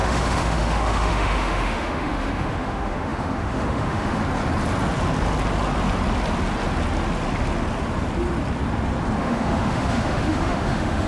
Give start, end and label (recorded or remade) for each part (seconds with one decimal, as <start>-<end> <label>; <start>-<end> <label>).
0.0-4.2 remade; 4.2-9.2 recorded; 9.2-11.1 remade